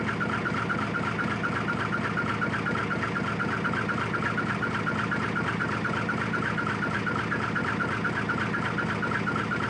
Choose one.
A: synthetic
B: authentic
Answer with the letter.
B